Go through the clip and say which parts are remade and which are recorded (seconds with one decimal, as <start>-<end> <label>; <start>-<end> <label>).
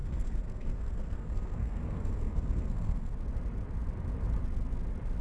0.0-3.1 remade; 3.1-5.2 recorded